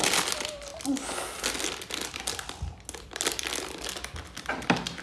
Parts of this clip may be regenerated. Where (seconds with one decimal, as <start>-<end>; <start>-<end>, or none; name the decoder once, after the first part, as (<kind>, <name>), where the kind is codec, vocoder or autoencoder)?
none